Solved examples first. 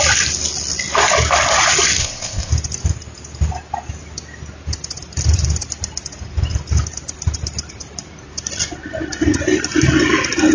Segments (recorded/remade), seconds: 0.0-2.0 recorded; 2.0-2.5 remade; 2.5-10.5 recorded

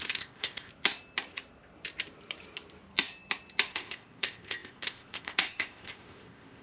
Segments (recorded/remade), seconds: 0.0-0.7 remade; 0.7-3.7 recorded; 3.7-6.6 remade

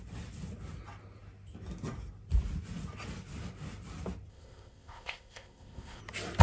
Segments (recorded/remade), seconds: 0.0-4.3 recorded; 4.3-6.0 remade; 6.0-6.4 recorded

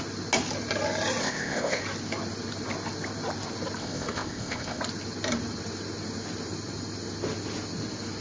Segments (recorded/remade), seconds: 0.0-1.2 recorded; 1.2-1.8 remade; 1.8-3.8 recorded; 3.8-4.8 remade; 4.8-8.2 recorded

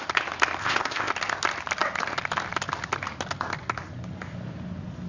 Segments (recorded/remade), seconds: 0.0-0.6 recorded; 0.6-1.1 remade; 1.1-5.1 recorded

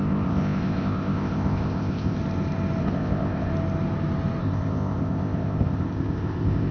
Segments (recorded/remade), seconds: 0.0-2.2 remade; 2.2-2.8 recorded; 2.8-3.5 remade; 3.5-4.4 recorded; 4.4-6.7 remade